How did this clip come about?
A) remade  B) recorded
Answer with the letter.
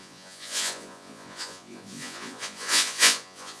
A